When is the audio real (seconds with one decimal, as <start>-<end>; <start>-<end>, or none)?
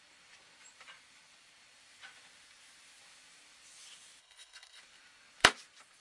0.0-4.2; 4.8-6.0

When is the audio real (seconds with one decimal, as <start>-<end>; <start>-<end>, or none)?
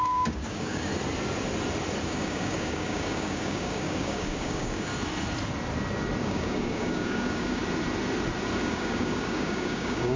0.9-2.0; 4.9-6.2; 7.6-8.6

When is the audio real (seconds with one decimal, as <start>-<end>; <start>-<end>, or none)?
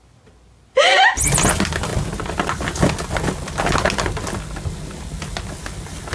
0.0-6.1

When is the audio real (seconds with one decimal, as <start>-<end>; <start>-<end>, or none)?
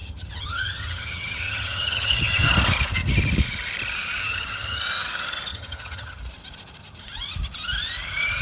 2.5-4.2; 4.8-5.5; 6.2-8.4